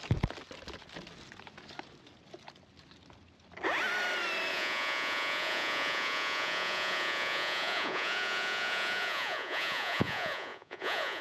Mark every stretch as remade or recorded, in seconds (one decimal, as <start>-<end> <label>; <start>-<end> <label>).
0.0-4.5 recorded; 4.5-11.2 remade